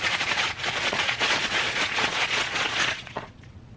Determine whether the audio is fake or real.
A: fake